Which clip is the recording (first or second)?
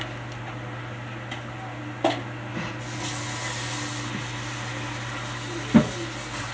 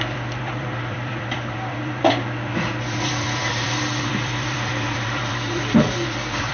first